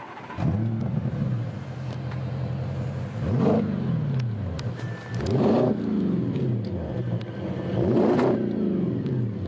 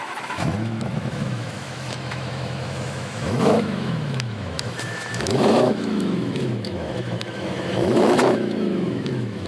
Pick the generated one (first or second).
second